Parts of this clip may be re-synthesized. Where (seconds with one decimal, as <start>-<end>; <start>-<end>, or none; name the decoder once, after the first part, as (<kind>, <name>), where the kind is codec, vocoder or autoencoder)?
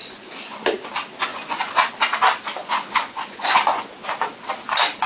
0.0-0.6 (vocoder, Vocos); 1.3-1.9; 2.6-3.9